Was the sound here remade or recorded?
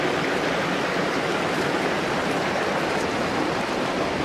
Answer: recorded